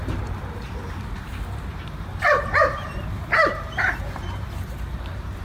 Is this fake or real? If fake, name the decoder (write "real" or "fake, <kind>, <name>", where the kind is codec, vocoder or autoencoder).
fake, vocoder, BigVGAN v2